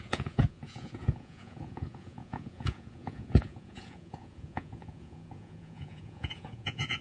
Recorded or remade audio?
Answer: remade